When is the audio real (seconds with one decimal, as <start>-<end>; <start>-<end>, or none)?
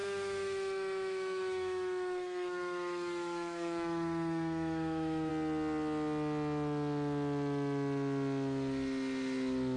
5.3-9.8